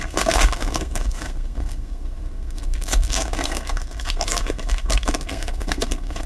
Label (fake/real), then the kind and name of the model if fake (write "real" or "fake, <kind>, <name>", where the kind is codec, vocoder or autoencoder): fake, codec, SNAC